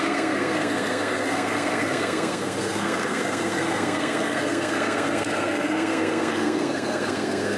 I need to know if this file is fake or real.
fake